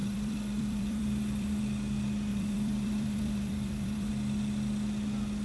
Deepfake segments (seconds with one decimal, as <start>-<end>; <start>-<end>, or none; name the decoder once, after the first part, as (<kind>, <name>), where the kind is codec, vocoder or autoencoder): 0.0-1.6 (vocoder, BigVGAN v2); 2.3-4.1